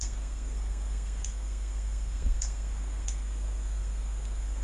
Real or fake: fake